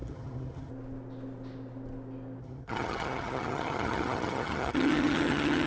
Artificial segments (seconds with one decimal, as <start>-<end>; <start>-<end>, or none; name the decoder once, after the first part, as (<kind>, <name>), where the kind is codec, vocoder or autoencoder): 0.0-0.7 (vocoder, HiFi-GAN); 2.4-5.7